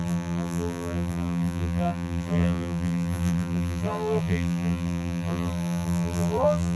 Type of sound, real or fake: fake